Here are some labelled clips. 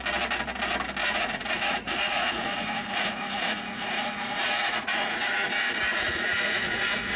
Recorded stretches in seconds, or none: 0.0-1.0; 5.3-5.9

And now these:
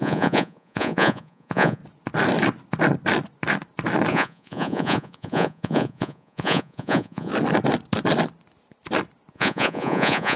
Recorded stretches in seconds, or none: 1.8-4.1; 7.3-9.3

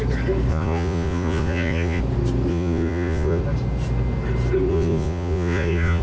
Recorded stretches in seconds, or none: 0.0-0.5; 2.0-2.5; 3.4-4.7

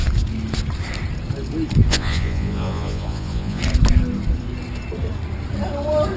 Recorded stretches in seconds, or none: 0.0-1.9; 3.6-6.2